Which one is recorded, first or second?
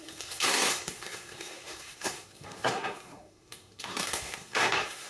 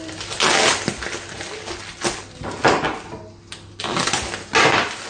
second